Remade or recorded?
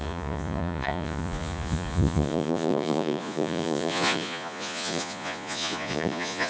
remade